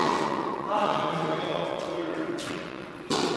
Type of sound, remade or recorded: remade